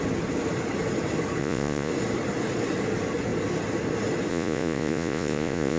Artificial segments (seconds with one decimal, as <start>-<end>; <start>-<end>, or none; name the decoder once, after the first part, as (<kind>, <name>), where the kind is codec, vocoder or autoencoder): 1.4-1.9 (vocoder, Vocos); 4.3-5.8